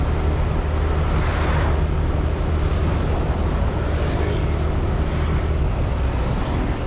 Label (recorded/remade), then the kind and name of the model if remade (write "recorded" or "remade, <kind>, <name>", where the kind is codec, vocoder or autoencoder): recorded